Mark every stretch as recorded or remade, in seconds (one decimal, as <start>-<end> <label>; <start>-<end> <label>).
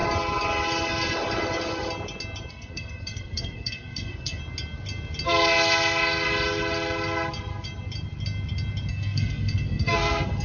0.0-2.5 recorded; 2.5-4.4 remade; 4.4-8.9 recorded; 8.9-10.4 remade